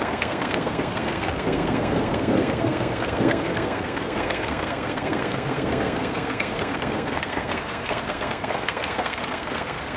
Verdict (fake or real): fake